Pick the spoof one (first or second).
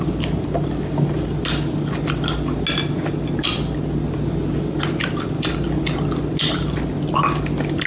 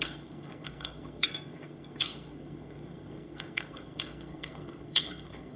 second